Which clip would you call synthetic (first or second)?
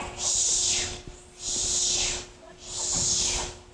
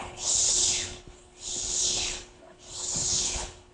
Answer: second